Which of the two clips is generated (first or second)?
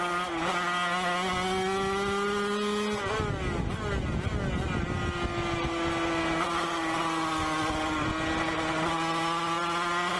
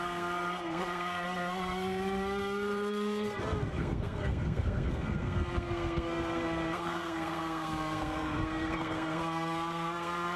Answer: second